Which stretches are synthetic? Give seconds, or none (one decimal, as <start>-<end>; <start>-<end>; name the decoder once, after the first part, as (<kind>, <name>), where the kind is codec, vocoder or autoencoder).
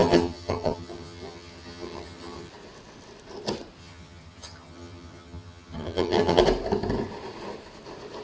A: 0.0-2.5 (vocoder, HiFi-GAN); 3.8-6.4